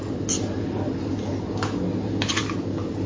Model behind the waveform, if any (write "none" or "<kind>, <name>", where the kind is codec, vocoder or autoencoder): none